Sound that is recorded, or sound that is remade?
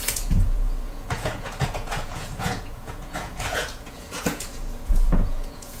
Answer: remade